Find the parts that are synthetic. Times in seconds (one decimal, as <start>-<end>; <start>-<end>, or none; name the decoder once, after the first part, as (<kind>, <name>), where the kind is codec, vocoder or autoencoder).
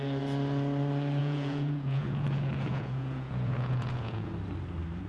1.2-4.3 (vocoder, Vocos)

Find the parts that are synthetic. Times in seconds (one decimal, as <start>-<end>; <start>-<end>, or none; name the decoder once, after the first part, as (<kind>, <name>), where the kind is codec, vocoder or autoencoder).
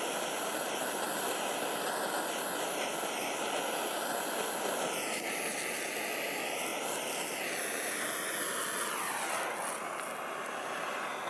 none